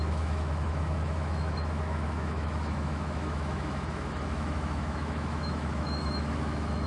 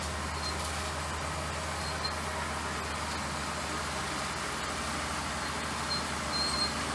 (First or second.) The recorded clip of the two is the second